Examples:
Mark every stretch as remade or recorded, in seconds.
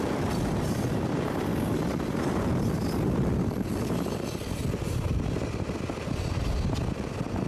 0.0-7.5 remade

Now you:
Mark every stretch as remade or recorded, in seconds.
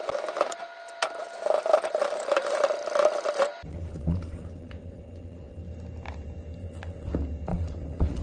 0.0-3.7 recorded; 3.7-5.6 remade; 5.6-6.6 recorded; 6.6-7.1 remade; 7.1-7.5 recorded; 7.5-8.2 remade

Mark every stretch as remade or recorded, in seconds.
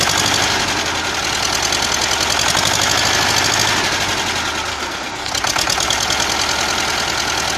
0.0-4.7 recorded; 4.7-5.3 remade; 5.3-7.6 recorded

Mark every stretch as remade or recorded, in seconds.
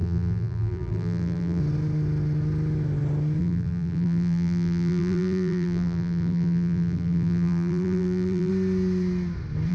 0.0-1.6 remade; 1.6-3.4 recorded; 3.4-8.5 remade; 8.5-9.7 recorded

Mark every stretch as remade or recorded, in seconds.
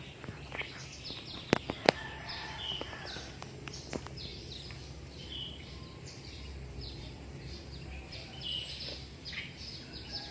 0.0-2.0 recorded; 2.0-2.6 remade; 2.6-4.3 recorded; 4.3-8.7 remade; 8.7-10.3 recorded